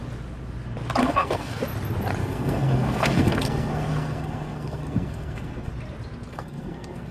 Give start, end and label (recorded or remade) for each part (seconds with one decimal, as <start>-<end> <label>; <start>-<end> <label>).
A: 0.0-1.0 recorded; 1.0-1.6 remade; 1.6-2.2 recorded; 2.2-5.7 remade; 5.7-6.3 recorded; 6.3-7.1 remade